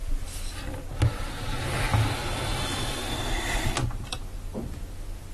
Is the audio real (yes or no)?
yes